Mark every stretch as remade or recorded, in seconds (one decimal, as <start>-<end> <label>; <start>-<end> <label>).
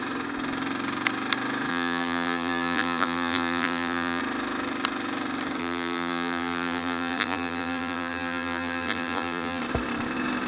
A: 0.0-1.7 recorded; 1.7-4.2 remade; 4.2-5.6 recorded; 5.6-9.6 remade; 9.6-10.5 recorded